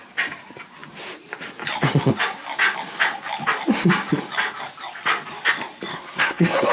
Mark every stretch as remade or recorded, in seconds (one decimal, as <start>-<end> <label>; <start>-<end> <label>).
0.0-5.9 recorded; 5.9-6.7 remade